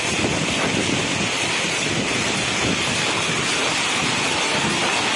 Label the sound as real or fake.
real